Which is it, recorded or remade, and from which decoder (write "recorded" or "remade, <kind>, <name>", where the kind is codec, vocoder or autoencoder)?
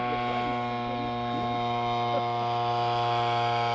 recorded